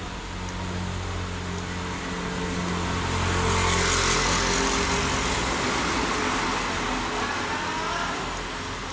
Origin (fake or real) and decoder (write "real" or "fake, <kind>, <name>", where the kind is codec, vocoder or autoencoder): real